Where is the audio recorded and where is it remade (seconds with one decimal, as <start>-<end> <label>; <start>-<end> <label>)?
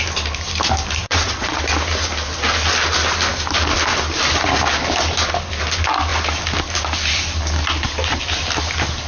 0.0-1.0 recorded; 1.0-1.6 remade; 1.6-9.1 recorded